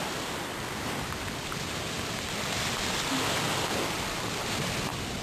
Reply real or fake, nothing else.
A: real